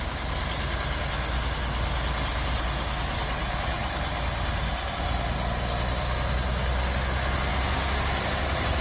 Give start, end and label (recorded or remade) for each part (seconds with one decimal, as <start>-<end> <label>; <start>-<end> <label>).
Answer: 0.0-8.8 recorded